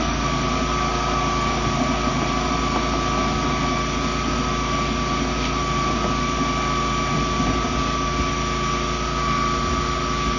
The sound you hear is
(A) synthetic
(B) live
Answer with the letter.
B